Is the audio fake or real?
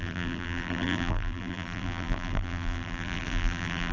fake